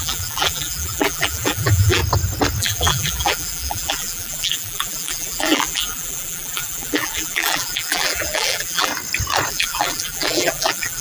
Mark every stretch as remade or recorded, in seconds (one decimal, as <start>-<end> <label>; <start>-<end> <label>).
0.0-2.0 remade; 2.0-2.6 recorded; 2.6-8.9 remade; 8.9-9.5 recorded; 9.5-11.0 remade